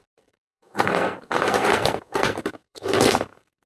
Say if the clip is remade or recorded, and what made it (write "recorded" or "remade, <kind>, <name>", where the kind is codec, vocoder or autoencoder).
remade, codec, SNAC